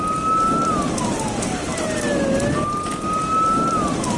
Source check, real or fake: real